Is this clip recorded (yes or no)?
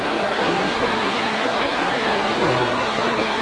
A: no